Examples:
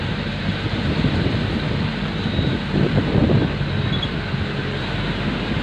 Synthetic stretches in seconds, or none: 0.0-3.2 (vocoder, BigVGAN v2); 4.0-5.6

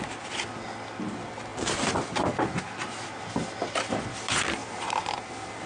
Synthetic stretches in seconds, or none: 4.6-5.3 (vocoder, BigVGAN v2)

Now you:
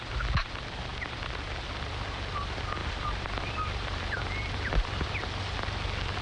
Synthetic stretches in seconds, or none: 2.8-5.1 (vocoder, BigVGAN v2)

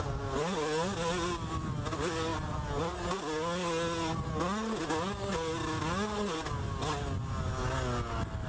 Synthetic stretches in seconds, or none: none

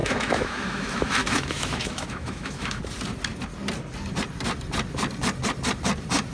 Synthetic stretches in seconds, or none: 0.0-2.8 (autoencoder, DAC-VAE)

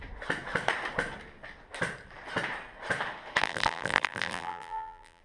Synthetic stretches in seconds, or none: 3.4-5.2 (vocoder, BigVGAN v2)